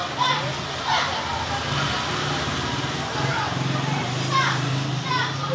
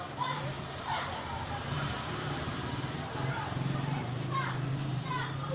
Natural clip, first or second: first